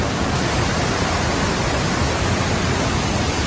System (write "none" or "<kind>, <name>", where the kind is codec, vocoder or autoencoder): none